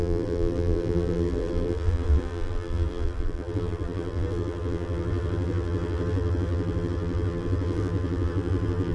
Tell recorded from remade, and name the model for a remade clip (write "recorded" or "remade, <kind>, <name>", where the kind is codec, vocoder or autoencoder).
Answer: remade, vocoder, BigVGAN v2